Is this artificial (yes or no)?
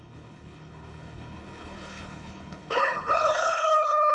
yes